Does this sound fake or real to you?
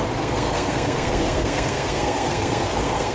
fake